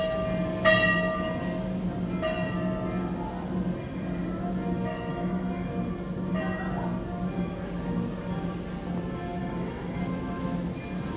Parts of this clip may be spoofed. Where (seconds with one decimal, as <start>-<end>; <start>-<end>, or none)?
5.1-5.7; 9.4-10.0